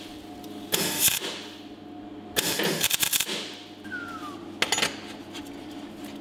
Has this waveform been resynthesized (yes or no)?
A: no